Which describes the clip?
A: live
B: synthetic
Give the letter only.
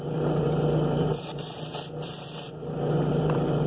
A